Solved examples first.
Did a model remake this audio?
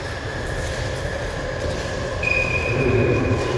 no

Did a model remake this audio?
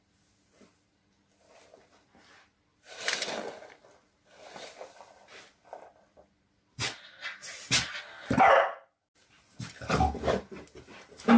no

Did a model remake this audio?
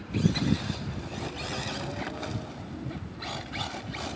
no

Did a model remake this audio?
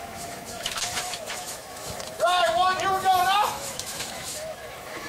yes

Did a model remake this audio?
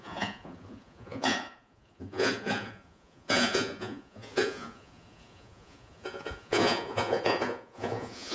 yes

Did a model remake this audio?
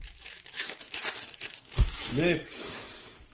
yes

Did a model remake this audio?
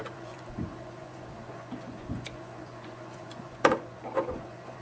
yes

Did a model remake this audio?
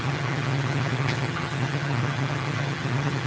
yes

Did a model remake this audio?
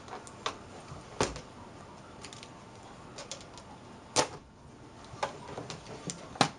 no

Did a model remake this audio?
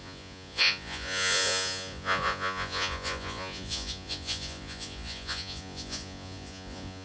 yes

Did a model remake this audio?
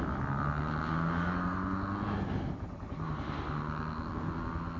no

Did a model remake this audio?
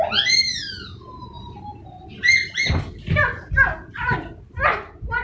no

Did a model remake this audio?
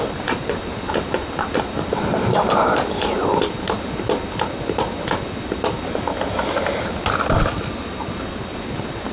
yes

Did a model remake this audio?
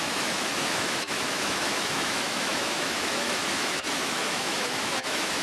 yes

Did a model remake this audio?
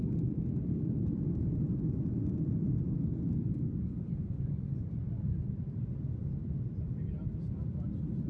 no